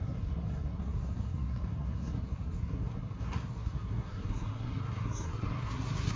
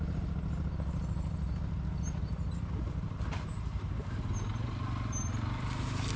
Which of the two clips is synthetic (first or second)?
first